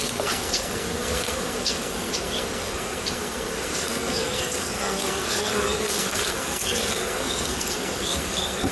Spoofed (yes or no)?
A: yes